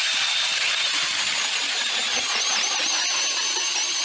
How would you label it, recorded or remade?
recorded